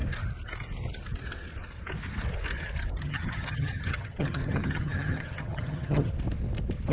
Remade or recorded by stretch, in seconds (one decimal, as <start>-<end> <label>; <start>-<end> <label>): 0.0-3.0 recorded; 3.0-6.1 remade; 6.1-6.9 recorded